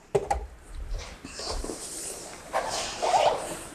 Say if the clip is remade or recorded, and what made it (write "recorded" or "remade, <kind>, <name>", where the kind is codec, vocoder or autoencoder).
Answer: remade, vocoder, BigVGAN v2